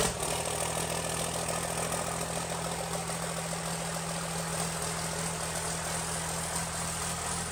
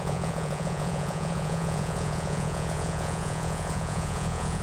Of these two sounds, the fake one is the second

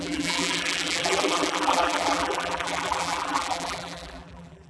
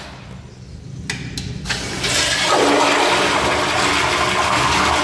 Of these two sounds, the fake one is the first